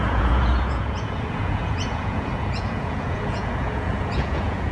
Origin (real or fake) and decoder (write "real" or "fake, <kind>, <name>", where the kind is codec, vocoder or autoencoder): fake, vocoder, Vocos